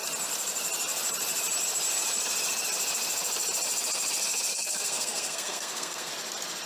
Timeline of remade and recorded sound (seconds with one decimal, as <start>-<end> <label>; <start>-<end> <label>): 0.0-4.5 recorded; 4.5-6.1 remade; 6.1-6.7 recorded